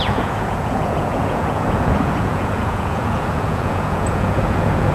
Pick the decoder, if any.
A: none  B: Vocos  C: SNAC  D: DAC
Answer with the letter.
B